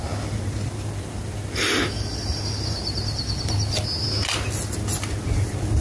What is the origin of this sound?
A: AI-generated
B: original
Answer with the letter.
B